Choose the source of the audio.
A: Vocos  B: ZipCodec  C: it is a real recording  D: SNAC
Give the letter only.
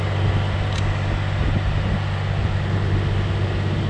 C